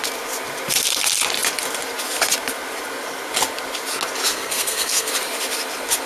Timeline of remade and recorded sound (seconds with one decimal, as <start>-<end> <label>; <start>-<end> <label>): 0.0-4.3 recorded; 4.3-5.1 remade; 5.1-6.1 recorded